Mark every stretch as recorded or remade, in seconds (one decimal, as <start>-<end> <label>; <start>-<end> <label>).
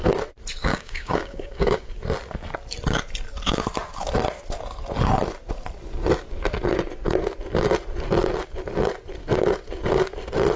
0.0-0.7 recorded; 0.7-1.9 remade; 1.9-10.6 recorded